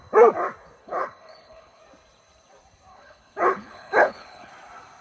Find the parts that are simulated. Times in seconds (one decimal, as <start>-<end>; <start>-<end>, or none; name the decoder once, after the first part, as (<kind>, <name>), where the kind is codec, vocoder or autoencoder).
0.8-1.8 (codec, HILCodec); 2.9-4.5